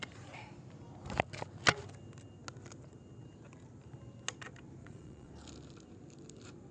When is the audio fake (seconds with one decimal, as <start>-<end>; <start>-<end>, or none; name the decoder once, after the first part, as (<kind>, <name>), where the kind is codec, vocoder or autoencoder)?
4.8-5.3 (vocoder, Vocos)